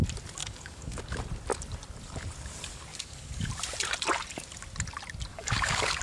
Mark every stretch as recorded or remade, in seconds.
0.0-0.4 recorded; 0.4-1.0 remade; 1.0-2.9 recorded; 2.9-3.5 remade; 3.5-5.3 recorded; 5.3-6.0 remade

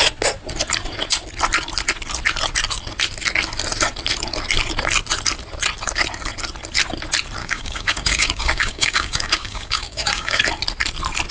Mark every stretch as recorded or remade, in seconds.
0.0-7.4 recorded; 7.4-10.4 remade; 10.4-11.3 recorded